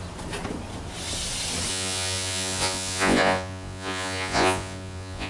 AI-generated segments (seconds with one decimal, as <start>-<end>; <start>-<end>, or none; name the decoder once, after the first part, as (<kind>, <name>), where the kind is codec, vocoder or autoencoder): 1.7-5.3 (vocoder, Vocos)